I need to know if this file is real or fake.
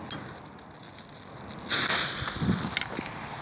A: real